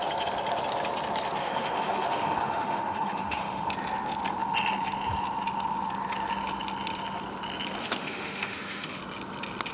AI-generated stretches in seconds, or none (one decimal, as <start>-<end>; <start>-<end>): 1.4-3.7; 7.8-9.0